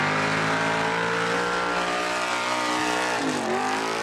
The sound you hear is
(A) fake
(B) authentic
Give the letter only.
B